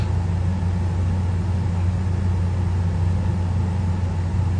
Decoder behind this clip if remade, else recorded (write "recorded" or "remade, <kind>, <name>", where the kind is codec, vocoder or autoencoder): recorded